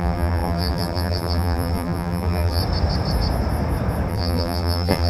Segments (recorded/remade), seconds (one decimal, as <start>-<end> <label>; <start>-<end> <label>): 0.0-2.6 remade; 2.6-4.1 recorded; 4.1-5.1 remade